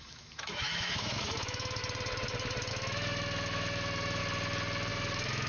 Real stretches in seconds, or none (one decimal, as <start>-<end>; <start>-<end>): 1.8-2.7; 4.2-4.9